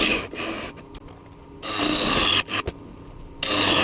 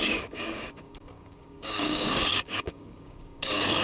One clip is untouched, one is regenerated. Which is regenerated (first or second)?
second